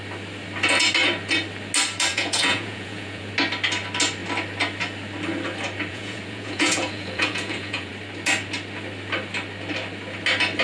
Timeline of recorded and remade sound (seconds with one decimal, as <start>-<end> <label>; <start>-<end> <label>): 0.0-2.1 recorded; 2.1-3.3 remade; 3.3-5.9 recorded; 5.9-7.9 remade; 7.9-10.6 recorded